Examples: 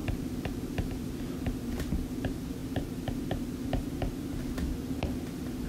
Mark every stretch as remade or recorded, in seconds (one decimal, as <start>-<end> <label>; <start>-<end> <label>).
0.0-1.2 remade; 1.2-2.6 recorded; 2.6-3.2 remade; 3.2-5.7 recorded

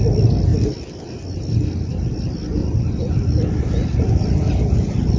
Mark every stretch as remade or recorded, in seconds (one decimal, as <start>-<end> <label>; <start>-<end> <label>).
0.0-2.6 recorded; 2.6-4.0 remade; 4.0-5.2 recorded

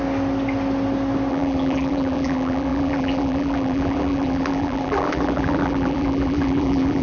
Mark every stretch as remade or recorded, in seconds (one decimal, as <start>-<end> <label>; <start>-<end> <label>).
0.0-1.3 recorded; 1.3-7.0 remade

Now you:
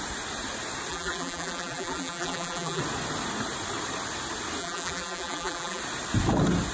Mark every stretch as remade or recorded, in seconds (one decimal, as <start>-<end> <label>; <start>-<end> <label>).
0.0-0.9 recorded; 0.9-2.8 remade; 2.8-4.6 recorded; 4.6-5.8 remade; 5.8-6.7 recorded

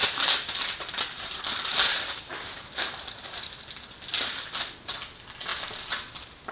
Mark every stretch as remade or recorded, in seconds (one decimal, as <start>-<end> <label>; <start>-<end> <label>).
0.0-1.4 remade; 1.4-1.9 recorded; 1.9-3.4 remade; 3.4-6.5 recorded

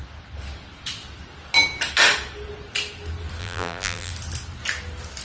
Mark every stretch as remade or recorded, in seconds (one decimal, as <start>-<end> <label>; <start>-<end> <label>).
0.0-3.4 recorded; 3.4-4.1 remade; 4.1-5.2 recorded

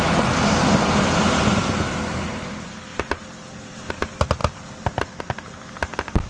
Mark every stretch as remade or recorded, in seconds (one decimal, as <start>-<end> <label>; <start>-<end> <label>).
0.0-2.9 recorded; 2.9-3.9 remade; 3.9-4.4 recorded; 4.4-5.2 remade; 5.2-6.3 recorded